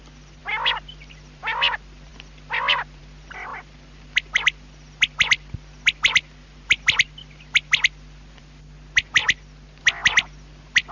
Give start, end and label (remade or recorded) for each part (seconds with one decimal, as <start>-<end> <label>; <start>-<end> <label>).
0.0-10.9 recorded